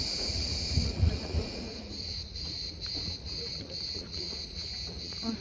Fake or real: fake